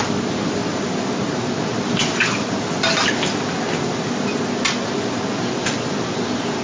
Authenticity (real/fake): real